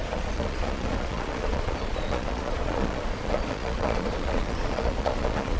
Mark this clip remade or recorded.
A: remade